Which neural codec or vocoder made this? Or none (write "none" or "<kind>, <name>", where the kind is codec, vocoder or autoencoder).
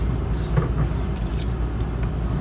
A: none